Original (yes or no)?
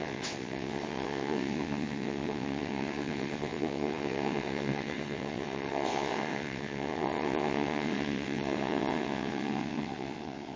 no